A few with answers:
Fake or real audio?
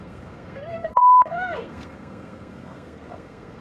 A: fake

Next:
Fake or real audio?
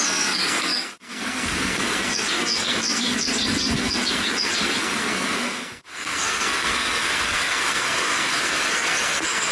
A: fake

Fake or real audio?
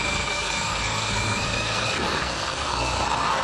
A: fake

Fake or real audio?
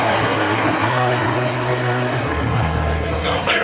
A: fake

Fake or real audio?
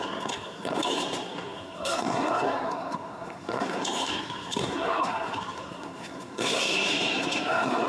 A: fake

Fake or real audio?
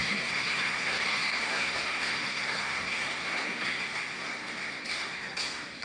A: fake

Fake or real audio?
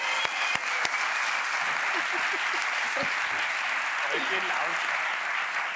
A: real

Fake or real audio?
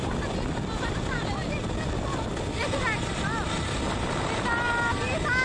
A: real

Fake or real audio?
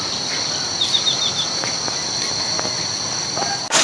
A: real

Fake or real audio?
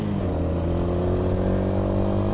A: real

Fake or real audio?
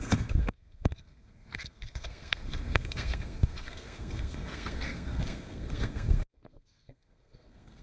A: fake